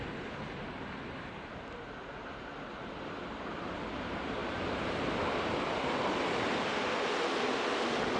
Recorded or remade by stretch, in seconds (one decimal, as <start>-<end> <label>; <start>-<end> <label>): 0.0-4.4 recorded; 4.4-7.1 remade; 7.1-8.2 recorded